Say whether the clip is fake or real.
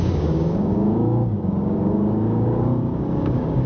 fake